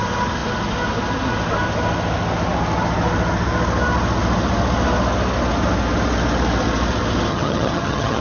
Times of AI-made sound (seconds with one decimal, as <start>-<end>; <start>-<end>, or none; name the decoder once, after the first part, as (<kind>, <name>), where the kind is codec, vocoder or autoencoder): 7.3-8.2 (vocoder, HiFi-GAN)